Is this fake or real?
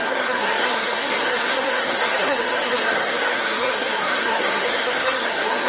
fake